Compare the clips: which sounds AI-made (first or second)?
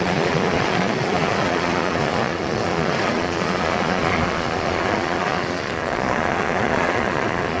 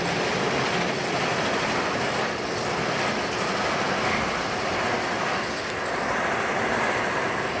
first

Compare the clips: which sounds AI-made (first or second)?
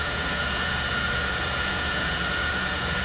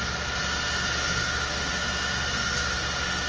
first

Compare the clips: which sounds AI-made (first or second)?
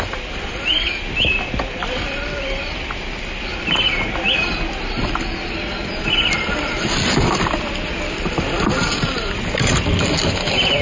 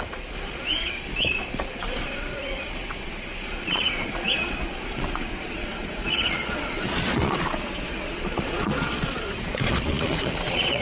second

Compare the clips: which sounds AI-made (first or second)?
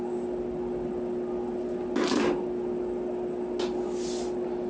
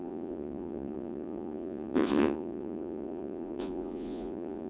second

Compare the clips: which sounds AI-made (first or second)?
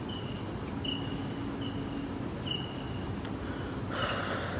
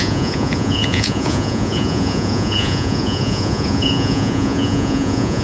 second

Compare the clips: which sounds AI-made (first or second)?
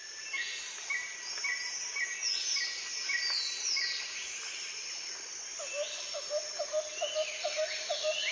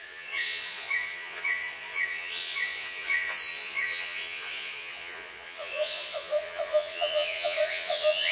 second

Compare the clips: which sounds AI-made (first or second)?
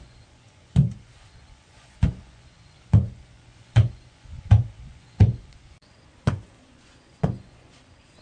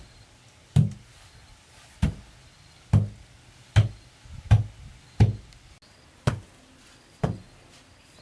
first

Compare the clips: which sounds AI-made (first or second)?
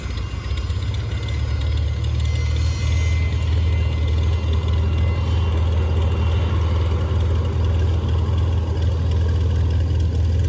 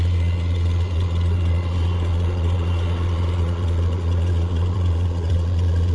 second